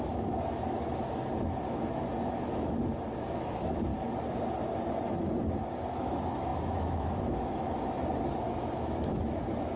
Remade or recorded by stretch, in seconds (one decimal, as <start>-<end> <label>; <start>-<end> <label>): 0.0-3.9 remade; 3.9-5.7 recorded; 5.7-9.8 remade